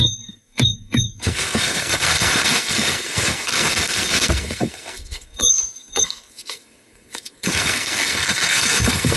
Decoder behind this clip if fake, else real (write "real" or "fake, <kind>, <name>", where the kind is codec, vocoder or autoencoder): fake, codec, SNAC